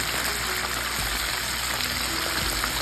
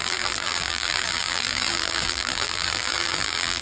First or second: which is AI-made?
second